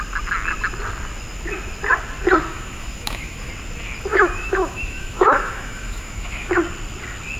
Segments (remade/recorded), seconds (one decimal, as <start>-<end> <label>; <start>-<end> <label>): 0.0-2.5 recorded; 2.5-3.5 remade; 3.5-4.1 recorded; 4.1-6.5 remade; 6.5-7.4 recorded